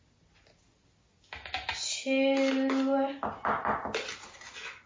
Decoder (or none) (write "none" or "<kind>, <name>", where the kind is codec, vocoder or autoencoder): none